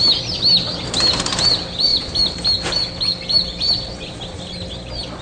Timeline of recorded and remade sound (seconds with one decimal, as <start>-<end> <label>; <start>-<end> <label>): 0.0-5.2 recorded